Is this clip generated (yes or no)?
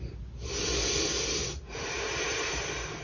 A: no